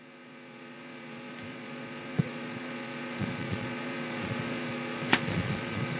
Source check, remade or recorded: remade